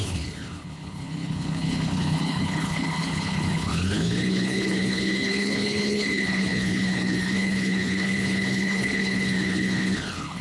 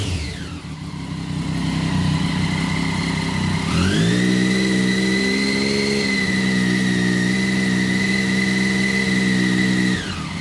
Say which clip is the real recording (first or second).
second